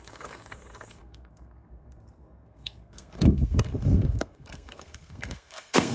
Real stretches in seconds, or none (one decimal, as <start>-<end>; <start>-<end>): none